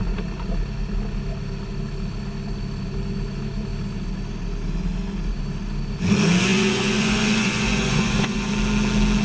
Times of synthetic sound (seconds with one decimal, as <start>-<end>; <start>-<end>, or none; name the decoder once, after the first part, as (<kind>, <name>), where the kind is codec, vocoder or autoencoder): 6.5-8.5 (vocoder, Vocos)